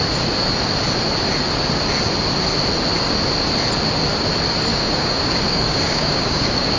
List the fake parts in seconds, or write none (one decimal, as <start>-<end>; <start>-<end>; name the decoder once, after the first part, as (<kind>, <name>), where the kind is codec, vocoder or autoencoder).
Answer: 4.7-6.8 (codec, DAC)